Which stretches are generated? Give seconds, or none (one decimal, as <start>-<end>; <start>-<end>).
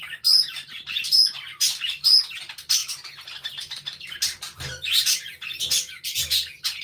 0.0-6.8